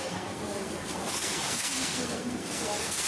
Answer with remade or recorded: remade